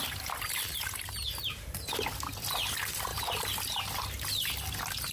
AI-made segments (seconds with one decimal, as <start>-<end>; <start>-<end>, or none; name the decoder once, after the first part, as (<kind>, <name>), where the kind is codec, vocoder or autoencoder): none